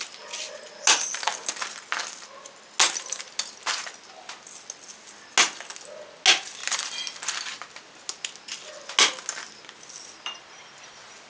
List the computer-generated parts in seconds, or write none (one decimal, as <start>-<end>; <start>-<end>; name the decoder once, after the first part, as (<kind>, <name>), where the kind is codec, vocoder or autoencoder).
none